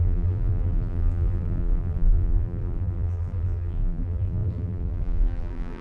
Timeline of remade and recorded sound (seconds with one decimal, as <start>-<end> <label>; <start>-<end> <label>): 0.0-5.8 remade

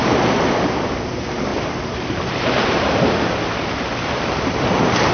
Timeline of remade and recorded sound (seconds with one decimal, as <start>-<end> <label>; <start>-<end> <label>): 0.0-1.5 recorded; 1.5-4.6 remade; 4.6-5.1 recorded